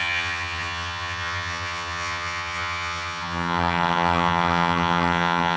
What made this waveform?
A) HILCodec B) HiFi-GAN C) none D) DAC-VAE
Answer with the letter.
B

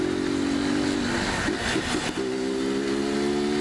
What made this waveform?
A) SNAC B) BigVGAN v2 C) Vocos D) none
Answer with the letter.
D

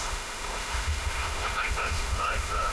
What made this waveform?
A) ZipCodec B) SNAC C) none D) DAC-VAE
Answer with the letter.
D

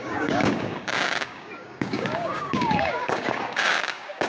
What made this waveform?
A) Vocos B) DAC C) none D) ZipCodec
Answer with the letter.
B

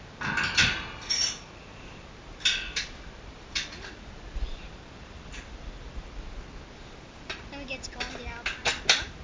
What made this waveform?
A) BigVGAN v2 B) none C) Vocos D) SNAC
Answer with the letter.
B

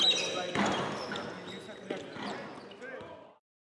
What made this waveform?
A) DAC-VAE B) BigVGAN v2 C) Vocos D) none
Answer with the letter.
D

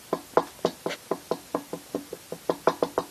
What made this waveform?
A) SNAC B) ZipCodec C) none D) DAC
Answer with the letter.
C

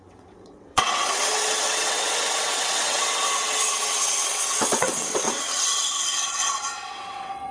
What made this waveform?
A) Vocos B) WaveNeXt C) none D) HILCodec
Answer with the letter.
B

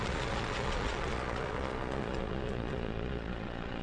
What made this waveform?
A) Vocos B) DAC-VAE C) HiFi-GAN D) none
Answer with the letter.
A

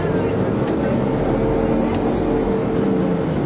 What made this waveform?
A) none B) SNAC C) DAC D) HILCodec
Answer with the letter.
A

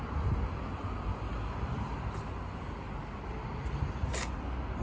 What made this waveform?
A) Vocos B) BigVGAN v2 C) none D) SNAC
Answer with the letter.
C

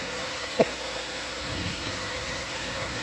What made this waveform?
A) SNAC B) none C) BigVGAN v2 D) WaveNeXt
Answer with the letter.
A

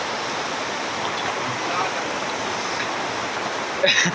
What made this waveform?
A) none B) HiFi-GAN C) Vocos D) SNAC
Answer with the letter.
A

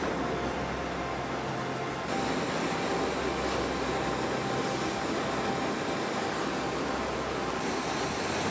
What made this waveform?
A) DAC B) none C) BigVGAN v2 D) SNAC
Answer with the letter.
B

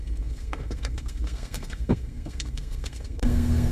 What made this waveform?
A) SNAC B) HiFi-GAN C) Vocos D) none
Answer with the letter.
A